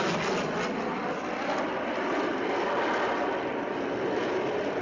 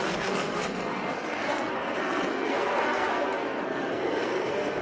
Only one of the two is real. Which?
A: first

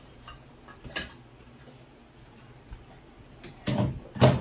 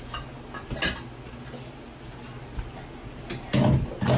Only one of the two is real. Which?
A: second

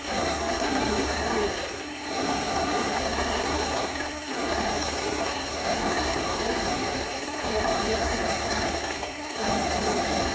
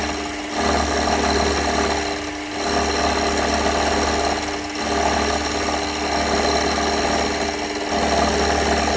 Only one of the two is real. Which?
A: second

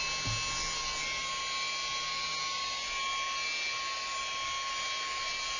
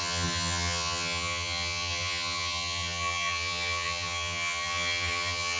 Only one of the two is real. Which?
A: first